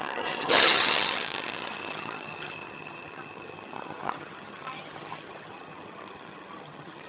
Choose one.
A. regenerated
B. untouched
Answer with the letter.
A